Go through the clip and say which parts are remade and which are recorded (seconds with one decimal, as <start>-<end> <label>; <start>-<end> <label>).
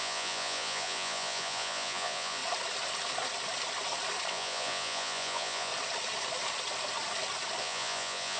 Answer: 0.0-2.4 remade; 2.4-4.3 recorded; 4.3-5.7 remade; 5.7-7.6 recorded; 7.6-8.4 remade